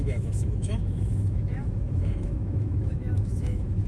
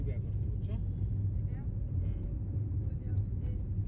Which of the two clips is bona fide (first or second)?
second